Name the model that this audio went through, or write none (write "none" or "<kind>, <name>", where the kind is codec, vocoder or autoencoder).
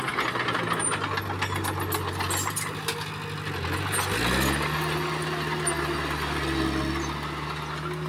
none